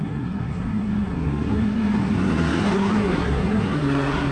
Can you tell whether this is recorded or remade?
remade